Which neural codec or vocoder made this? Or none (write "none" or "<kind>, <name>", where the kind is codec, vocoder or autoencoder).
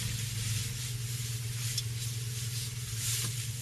none